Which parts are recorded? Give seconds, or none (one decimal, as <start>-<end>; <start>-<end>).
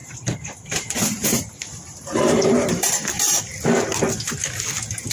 3.1-5.1